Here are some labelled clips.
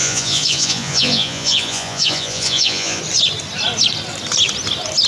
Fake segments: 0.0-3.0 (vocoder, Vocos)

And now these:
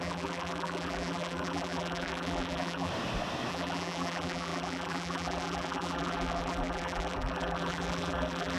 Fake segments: 0.0-2.9 (vocoder, BigVGAN v2); 3.5-8.6

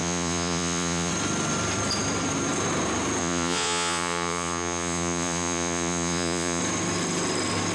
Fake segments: 0.0-1.1 (vocoder, Vocos); 3.2-6.6

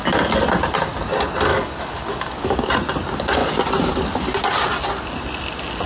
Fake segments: 1.5-2.7 (codec, DAC)

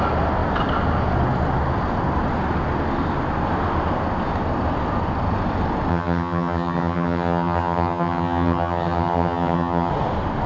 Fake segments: 5.9-9.9 (vocoder, HiFi-GAN)

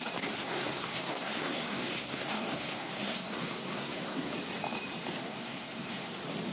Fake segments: 0.4-4.3 (codec, SNAC); 5.2-6.1